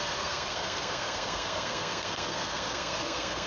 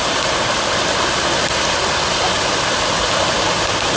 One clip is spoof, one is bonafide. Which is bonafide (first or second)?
second